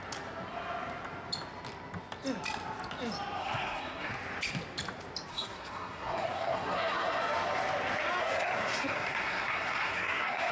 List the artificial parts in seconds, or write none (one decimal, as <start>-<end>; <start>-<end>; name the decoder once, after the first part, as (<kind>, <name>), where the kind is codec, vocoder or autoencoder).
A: 3.4-4.1 (codec, SNAC); 5.3-7.2; 8.2-10.5